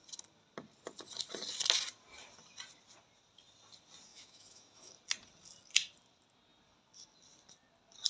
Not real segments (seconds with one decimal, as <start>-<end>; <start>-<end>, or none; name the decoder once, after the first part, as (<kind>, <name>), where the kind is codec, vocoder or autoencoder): 4.1-4.9 (autoencoder, DAC-VAE)